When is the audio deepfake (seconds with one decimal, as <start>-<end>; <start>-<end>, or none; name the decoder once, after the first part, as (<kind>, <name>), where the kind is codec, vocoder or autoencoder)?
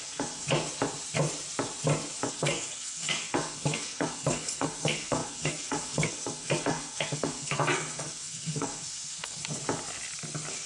0.0-0.4 (codec, SNAC); 2.3-9.4